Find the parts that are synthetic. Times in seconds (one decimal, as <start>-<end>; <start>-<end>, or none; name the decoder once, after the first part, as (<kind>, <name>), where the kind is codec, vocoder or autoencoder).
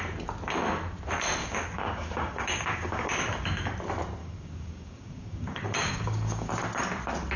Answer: 1.4-3.3 (codec, DAC); 4.2-6.5